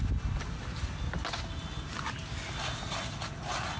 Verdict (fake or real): real